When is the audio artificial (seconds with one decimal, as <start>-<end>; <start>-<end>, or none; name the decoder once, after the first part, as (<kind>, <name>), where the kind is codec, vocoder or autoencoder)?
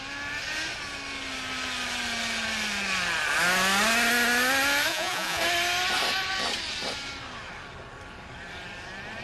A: 4.9-5.4 (vocoder, Vocos)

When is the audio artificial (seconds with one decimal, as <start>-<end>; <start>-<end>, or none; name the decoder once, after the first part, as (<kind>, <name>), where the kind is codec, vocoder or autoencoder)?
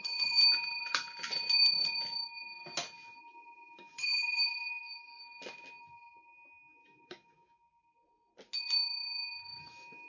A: 0.0-0.4 (autoencoder, DAC-VAE); 3.2-5.2; 5.8-8.3; 9.6-10.1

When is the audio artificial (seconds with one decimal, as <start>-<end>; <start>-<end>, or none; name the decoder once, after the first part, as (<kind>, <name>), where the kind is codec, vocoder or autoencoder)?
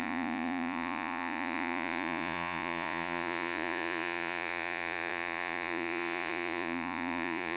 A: 0.0-7.6 (vocoder, Vocos)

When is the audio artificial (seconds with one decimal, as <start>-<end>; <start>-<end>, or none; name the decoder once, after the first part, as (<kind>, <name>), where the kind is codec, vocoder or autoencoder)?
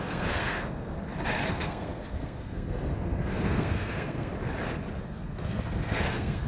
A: 0.0-0.9 (codec, SNAC); 1.5-4.3; 5.0-6.5